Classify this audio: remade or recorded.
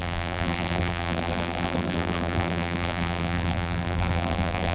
remade